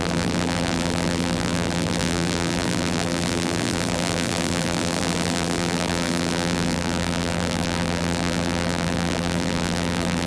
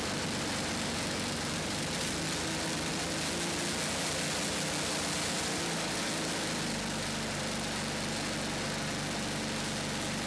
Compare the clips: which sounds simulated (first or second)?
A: first